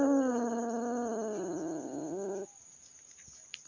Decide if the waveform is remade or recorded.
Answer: recorded